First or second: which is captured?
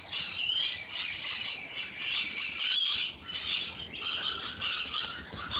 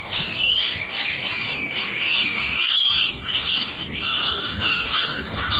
first